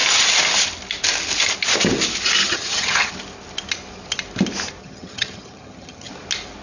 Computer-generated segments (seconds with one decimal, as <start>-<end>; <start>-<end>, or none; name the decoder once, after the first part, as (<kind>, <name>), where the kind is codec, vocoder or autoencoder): 2.4-3.1 (vocoder, HiFi-GAN); 4.8-6.1